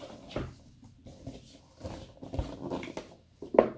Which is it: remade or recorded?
recorded